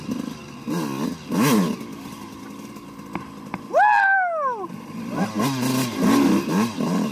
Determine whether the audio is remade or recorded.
recorded